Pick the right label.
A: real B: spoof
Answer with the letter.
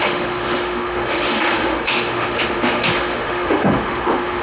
B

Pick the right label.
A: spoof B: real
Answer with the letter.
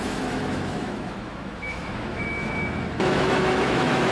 A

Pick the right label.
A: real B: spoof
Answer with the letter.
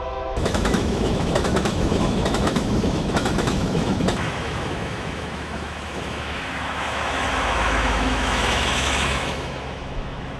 B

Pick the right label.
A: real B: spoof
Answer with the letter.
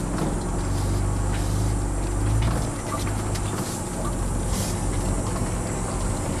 A